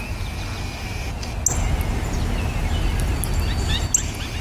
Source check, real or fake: real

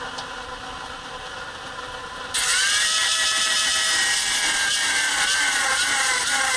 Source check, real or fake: fake